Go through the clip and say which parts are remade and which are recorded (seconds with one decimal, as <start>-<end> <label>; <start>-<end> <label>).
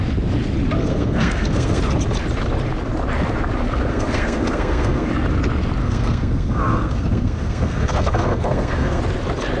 0.0-0.8 recorded; 0.8-1.8 remade; 1.8-3.9 recorded; 3.9-5.1 remade; 5.1-5.8 recorded; 5.8-9.0 remade; 9.0-9.6 recorded